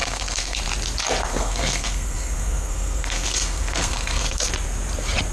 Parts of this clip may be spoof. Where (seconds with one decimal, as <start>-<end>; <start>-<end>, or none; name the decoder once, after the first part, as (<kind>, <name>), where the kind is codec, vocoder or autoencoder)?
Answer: 0.0-0.6 (codec, SNAC); 1.3-4.5